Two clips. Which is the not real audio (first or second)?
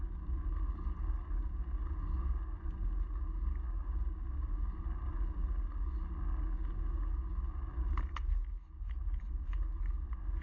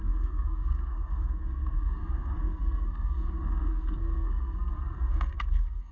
second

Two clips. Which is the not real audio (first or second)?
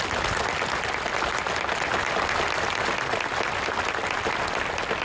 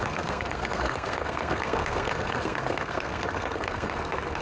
second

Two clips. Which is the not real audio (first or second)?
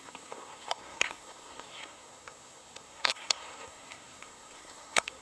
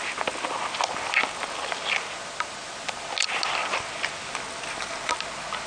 first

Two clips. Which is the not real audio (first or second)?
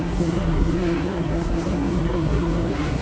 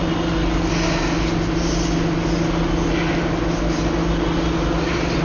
first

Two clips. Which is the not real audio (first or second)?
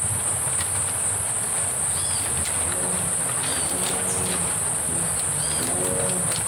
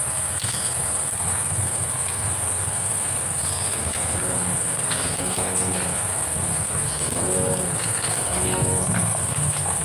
second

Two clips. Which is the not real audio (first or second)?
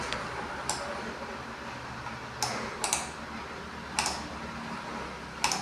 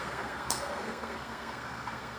second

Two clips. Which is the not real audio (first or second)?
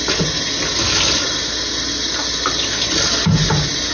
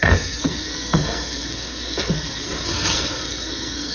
second